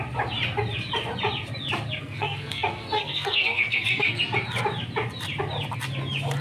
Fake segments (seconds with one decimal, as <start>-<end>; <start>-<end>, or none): 2.0-4.2